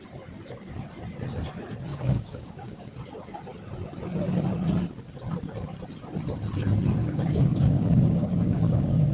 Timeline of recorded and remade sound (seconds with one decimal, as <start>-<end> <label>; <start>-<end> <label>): 0.0-1.9 recorded; 1.9-2.9 remade; 2.9-7.0 recorded; 7.0-9.1 remade